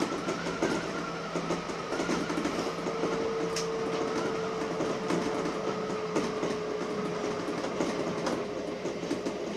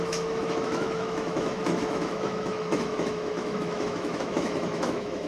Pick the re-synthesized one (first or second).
second